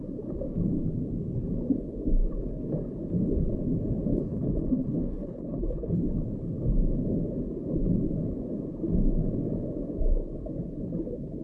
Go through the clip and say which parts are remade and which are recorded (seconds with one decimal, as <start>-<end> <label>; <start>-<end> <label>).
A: 0.0-4.1 recorded; 4.1-6.0 remade; 6.0-11.4 recorded